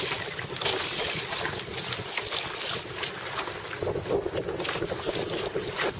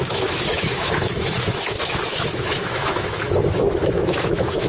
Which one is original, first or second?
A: first